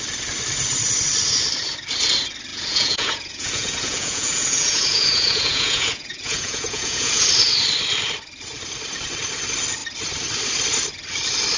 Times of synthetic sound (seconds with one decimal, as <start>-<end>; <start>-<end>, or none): 2.5-7.2

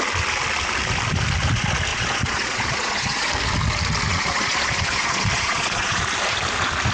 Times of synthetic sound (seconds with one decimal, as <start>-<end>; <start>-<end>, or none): 1.9-3.3; 4.1-6.0

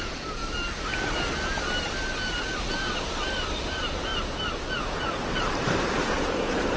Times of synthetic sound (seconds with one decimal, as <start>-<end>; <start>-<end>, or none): 0.0-0.4; 3.6-4.1; 4.8-5.2; 6.0-6.8

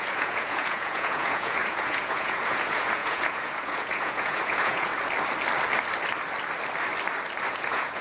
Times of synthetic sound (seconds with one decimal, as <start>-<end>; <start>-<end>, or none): 0.0-4.9; 7.5-8.0

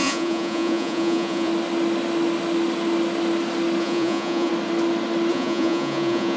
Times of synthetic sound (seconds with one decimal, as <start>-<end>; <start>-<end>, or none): 0.0-1.5; 3.8-4.5; 5.3-6.4